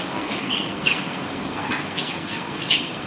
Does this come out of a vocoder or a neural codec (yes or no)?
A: yes